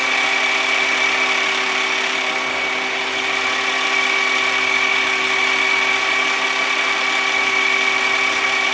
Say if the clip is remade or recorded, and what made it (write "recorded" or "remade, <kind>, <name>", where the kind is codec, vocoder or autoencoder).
remade, vocoder, BigVGAN v2